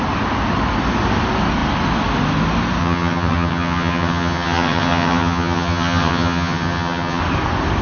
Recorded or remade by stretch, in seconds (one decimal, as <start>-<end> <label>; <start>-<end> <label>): 0.0-2.8 recorded; 2.8-7.2 remade; 7.2-7.8 recorded

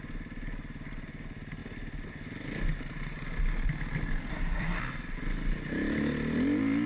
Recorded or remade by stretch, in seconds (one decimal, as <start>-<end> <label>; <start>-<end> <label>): 0.0-4.3 recorded; 4.3-4.8 remade; 4.8-6.9 recorded

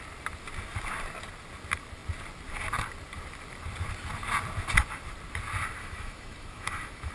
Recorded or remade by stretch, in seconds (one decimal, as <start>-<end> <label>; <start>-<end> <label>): 0.0-5.8 recorded; 5.8-7.1 remade